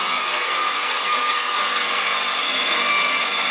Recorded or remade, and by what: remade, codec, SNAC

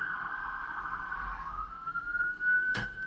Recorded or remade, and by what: remade, codec, SNAC